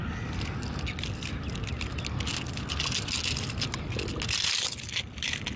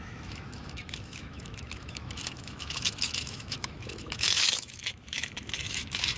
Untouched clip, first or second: first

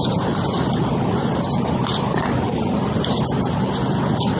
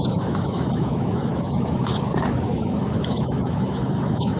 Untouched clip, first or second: first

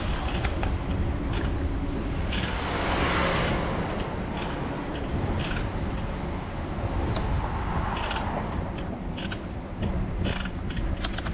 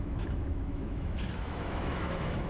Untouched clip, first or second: first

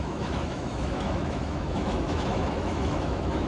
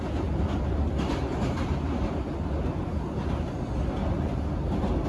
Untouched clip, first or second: second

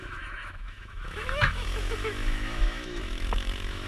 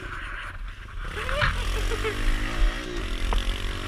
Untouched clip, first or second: second